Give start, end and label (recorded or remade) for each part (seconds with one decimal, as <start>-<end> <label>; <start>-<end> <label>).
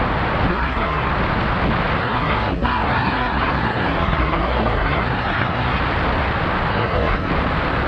0.0-0.5 recorded; 0.5-1.1 remade; 1.1-2.0 recorded; 2.0-5.8 remade; 5.8-6.7 recorded; 6.7-7.3 remade; 7.3-7.9 recorded